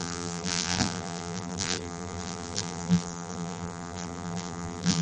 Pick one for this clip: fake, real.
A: fake